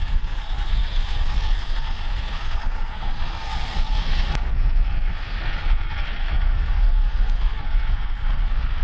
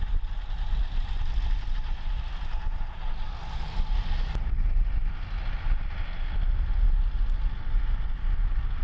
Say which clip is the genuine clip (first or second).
second